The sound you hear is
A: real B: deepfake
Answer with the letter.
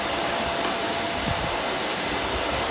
A